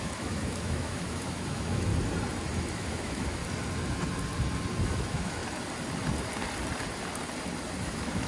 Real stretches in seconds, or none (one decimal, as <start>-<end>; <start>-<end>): 1.9-2.7; 3.4-4.8; 5.4-7.8